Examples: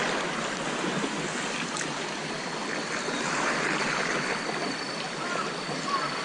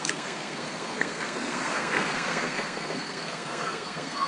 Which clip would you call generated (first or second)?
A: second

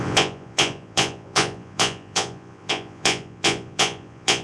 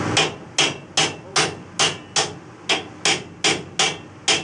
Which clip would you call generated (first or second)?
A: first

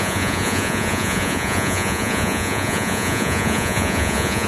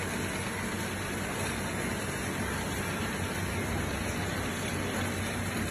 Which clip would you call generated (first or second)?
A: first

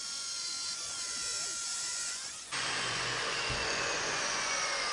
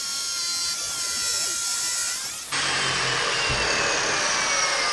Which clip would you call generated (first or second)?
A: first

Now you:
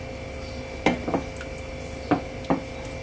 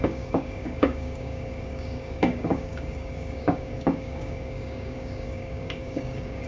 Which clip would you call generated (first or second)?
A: second